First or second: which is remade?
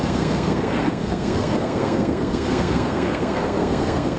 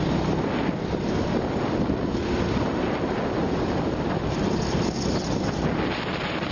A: first